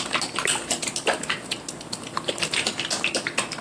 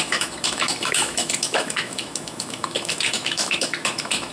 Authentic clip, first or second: first